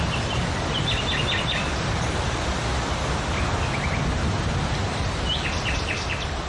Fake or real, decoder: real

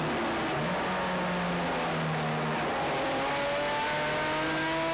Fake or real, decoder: real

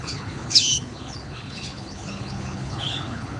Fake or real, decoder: fake, codec, HILCodec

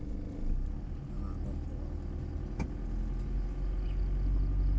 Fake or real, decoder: real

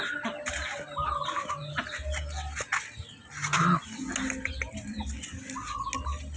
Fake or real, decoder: real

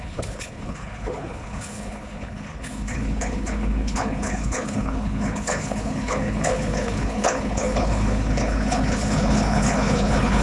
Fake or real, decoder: fake, codec, HILCodec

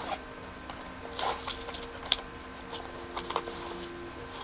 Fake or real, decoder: real